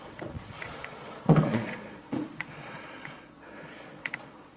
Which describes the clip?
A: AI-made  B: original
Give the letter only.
A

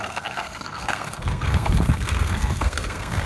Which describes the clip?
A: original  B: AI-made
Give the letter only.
B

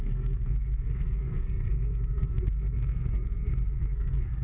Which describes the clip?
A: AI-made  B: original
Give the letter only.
A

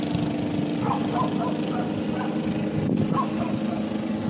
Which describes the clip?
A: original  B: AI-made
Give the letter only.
A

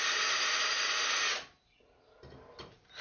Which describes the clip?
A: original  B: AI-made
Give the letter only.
A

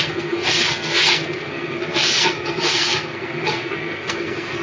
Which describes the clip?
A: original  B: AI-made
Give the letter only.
B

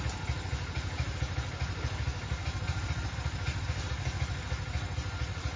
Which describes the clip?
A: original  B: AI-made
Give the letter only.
A